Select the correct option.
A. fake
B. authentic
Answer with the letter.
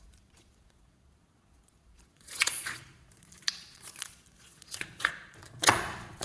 A